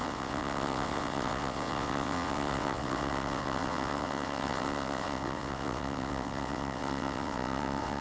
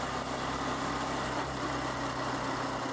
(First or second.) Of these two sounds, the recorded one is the second